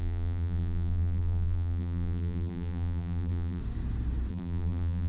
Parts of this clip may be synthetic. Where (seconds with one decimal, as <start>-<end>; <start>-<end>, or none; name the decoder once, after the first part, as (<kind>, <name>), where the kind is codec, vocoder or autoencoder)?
0.0-3.6 (vocoder, BigVGAN v2); 4.3-5.1